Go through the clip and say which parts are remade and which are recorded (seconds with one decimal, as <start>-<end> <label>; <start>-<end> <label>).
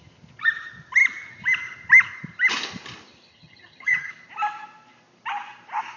0.0-3.3 recorded; 3.3-4.1 remade; 4.1-6.0 recorded